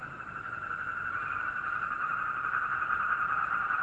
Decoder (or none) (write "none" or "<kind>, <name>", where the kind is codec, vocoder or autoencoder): none